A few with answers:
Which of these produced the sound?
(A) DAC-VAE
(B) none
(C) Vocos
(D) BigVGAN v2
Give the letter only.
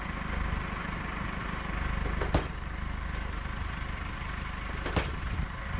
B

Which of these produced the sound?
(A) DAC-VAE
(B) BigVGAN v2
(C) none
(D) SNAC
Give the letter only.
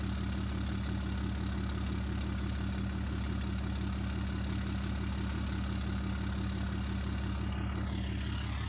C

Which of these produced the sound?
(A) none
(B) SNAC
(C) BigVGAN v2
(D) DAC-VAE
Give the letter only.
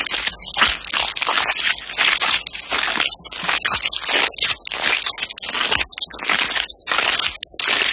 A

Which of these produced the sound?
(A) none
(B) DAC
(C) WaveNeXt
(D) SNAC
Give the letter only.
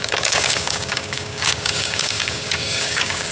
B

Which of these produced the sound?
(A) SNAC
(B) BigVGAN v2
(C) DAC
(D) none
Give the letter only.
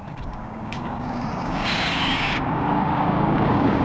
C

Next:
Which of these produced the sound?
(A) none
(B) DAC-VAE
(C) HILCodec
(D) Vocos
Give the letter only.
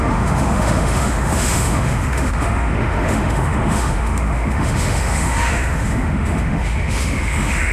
B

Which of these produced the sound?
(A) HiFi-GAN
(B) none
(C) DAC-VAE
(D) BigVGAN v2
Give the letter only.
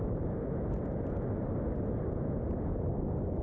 B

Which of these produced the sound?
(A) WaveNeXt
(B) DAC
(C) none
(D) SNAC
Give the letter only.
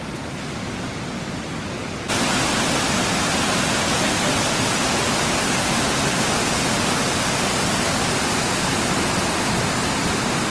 C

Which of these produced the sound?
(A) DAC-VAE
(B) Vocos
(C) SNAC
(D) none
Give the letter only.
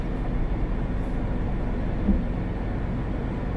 D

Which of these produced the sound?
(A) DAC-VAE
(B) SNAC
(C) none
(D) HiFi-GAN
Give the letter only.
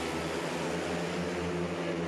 C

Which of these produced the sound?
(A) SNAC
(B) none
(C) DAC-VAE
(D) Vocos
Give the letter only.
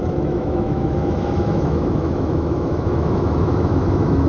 C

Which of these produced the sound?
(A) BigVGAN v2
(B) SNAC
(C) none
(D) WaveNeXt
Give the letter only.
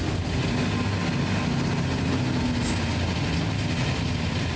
C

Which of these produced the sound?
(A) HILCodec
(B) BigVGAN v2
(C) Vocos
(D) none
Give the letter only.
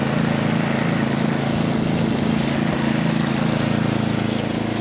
D